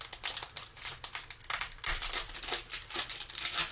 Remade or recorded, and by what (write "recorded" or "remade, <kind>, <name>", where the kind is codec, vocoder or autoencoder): recorded